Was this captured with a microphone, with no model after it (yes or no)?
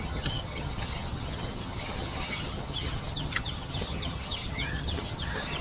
no